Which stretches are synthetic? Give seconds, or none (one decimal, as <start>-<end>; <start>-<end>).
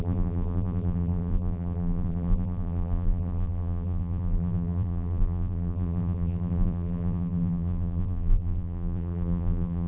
0.0-9.9